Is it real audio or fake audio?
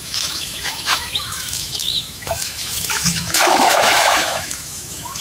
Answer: fake